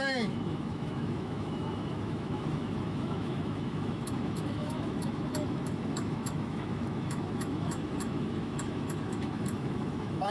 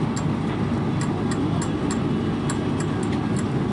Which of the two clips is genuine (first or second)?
second